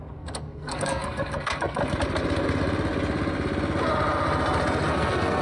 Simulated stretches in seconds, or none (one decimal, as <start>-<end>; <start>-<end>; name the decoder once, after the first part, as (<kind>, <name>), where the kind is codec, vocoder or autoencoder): 0.0-1.8 (codec, SNAC); 4.9-5.4